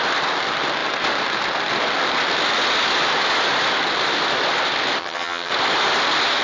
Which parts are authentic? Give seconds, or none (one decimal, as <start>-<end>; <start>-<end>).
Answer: 0.0-5.0; 5.5-6.4